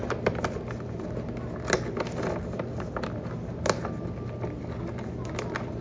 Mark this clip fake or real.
real